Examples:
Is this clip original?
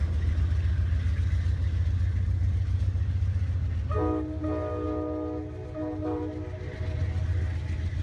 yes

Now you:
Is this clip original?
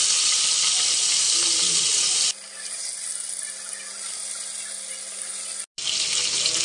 yes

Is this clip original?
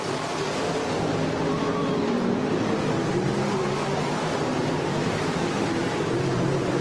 yes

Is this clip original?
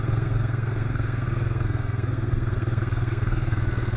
no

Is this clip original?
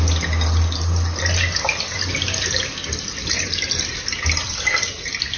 yes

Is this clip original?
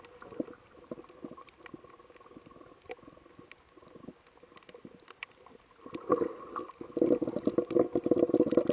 yes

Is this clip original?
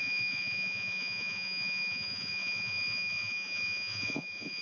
no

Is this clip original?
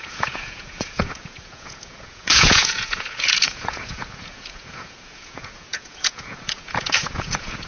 no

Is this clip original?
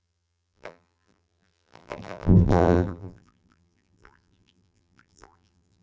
no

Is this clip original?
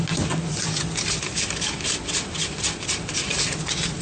yes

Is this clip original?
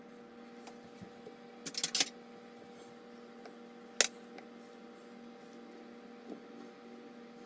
yes